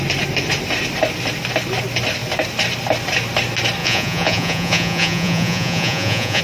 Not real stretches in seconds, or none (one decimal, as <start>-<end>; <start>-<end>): 3.8-6.4